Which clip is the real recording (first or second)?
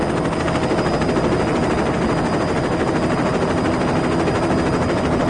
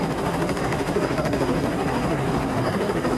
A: first